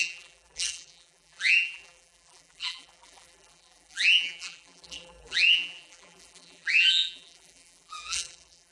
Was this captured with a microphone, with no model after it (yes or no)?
no